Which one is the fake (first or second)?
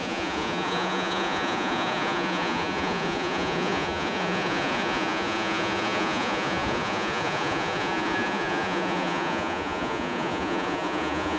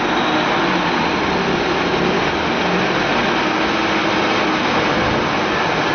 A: first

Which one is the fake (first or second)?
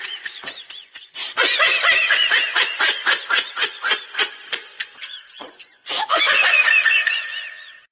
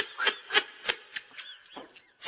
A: first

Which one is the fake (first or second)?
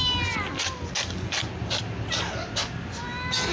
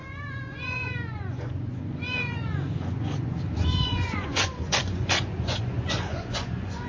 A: second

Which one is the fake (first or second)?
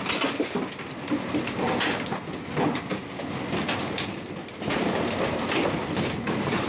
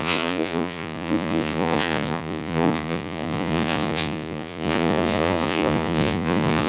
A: second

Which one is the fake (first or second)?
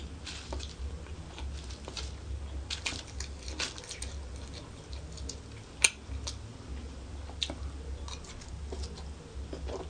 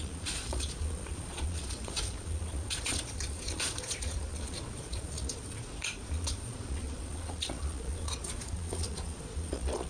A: second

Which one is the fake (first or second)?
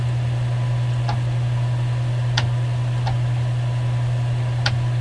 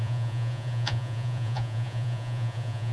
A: second